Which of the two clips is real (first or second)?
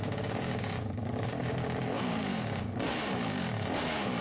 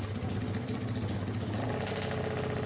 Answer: second